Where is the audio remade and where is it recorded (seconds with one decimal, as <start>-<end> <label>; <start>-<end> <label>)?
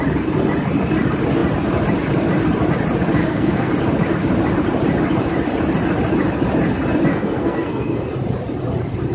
0.0-3.2 recorded; 3.2-3.7 remade; 3.7-7.1 recorded; 7.1-8.0 remade; 8.0-9.1 recorded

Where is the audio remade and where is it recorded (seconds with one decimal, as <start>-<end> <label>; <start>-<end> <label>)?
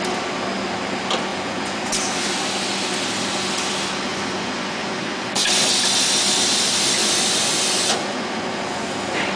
0.0-1.3 recorded; 1.3-2.3 remade; 2.3-4.1 recorded; 4.1-5.7 remade; 5.7-7.0 recorded; 7.0-8.9 remade; 8.9-9.4 recorded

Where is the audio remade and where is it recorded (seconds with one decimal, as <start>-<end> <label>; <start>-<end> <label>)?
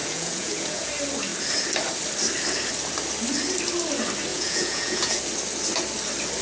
0.0-0.9 remade; 0.9-4.3 recorded; 4.3-5.2 remade; 5.2-6.4 recorded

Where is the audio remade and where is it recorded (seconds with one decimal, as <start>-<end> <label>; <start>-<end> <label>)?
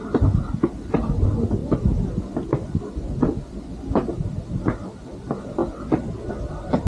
0.0-6.9 recorded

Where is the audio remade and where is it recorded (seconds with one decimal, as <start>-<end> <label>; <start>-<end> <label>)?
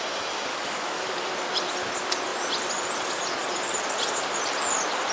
0.0-0.5 recorded; 0.5-1.3 remade; 1.3-5.1 recorded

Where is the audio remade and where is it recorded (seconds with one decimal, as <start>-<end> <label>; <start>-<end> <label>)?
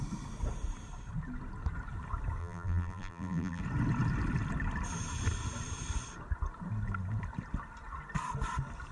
0.0-2.4 recorded; 2.4-3.6 remade; 3.6-8.9 recorded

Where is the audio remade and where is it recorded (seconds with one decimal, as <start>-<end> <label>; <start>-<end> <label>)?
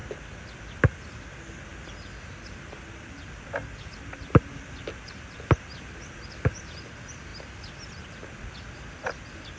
0.0-9.6 recorded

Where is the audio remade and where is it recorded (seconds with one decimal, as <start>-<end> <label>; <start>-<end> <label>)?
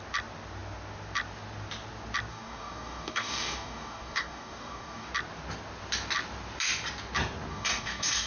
0.0-2.3 recorded; 2.3-5.1 remade; 5.1-7.5 recorded; 7.5-8.3 remade